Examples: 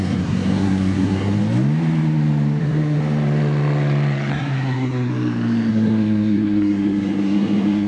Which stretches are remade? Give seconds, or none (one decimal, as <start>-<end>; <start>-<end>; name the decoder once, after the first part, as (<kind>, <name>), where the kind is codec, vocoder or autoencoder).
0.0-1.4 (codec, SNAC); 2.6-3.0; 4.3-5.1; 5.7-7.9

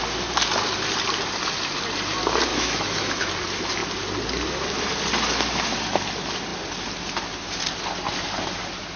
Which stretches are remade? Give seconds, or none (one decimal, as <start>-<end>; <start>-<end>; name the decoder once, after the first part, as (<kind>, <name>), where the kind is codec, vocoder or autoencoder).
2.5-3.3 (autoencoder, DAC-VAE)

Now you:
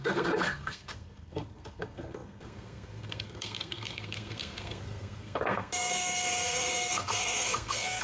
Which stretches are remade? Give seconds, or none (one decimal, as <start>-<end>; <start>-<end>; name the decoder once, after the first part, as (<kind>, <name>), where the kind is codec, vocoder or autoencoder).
0.0-8.0 (codec, SNAC)

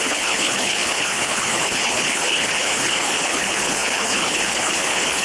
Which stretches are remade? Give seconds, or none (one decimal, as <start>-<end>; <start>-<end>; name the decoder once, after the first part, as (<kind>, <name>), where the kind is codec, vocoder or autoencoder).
0.0-5.2 (codec, HILCodec)